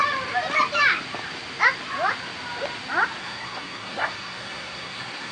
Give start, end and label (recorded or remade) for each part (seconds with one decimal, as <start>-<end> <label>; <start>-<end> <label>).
0.0-3.2 recorded; 3.2-5.3 remade